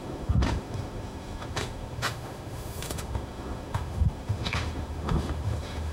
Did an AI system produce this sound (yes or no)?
yes